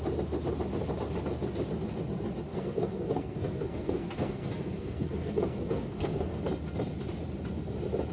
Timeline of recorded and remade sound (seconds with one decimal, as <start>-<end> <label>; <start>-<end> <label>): 0.0-2.5 recorded; 2.5-6.4 remade; 6.4-8.1 recorded